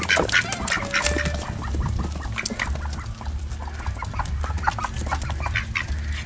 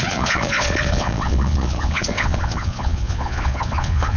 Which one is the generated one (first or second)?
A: second